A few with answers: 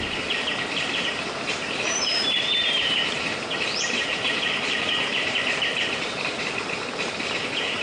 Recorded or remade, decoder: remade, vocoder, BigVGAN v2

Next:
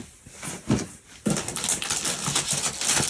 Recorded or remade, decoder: recorded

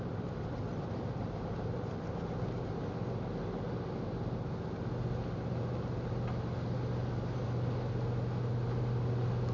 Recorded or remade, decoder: recorded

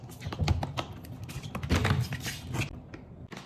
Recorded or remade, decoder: recorded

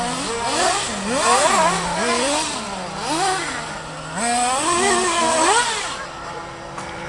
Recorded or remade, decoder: recorded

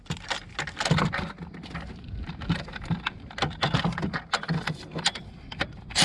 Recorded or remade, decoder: recorded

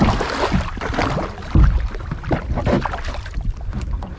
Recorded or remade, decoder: recorded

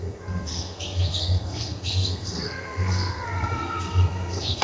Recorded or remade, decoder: remade, codec, SNAC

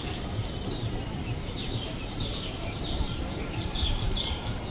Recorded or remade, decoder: remade, vocoder, BigVGAN v2